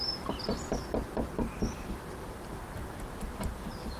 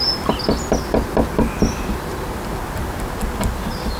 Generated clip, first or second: first